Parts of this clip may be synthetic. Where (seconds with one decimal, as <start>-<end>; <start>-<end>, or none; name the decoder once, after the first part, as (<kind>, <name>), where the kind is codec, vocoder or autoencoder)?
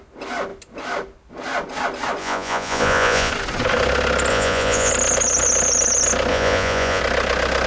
2.2-3.3 (vocoder, Vocos); 4.3-4.9; 6.3-7.0